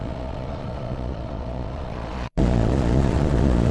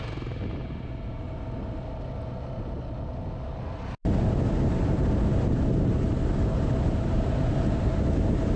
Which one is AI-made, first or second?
first